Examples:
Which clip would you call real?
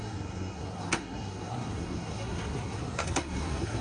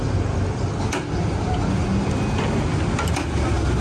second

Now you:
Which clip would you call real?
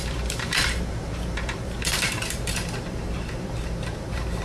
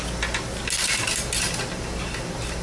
second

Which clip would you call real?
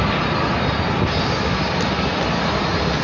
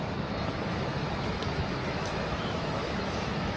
first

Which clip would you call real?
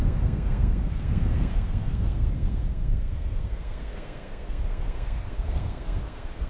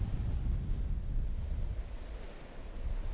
second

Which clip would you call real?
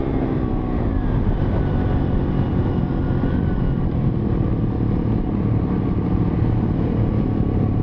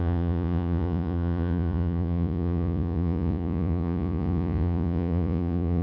first